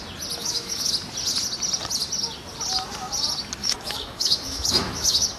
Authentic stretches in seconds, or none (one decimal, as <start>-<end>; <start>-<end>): 0.0-0.4; 0.9-3.6